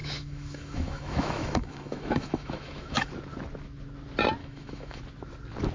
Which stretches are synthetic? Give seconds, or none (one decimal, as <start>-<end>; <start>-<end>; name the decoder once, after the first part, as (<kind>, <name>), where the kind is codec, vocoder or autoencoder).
0.0-3.1 (autoencoder, DAC-VAE); 4.4-5.0